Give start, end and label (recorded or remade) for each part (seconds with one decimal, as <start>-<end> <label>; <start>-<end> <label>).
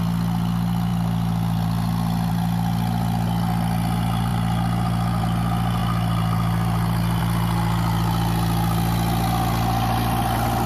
0.0-10.7 recorded